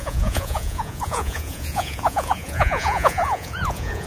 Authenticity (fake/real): fake